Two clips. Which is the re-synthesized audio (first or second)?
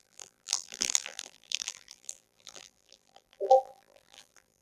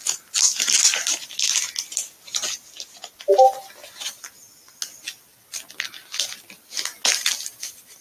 first